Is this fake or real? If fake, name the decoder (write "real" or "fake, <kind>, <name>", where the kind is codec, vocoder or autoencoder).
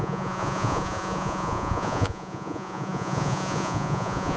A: fake, vocoder, Vocos